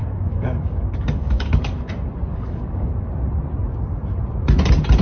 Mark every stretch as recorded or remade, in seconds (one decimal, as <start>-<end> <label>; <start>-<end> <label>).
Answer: 0.0-1.9 remade; 1.9-2.3 recorded; 2.3-2.9 remade; 2.9-5.0 recorded